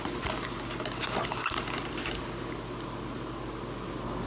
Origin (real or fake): real